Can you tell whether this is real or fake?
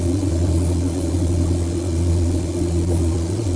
fake